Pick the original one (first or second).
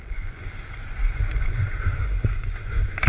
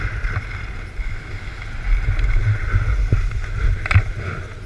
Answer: second